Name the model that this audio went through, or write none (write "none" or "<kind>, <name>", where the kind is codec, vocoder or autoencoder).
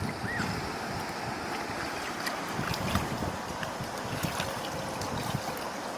none